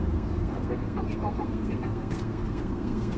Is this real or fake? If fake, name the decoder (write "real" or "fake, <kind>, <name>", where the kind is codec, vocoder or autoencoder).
fake, codec, SNAC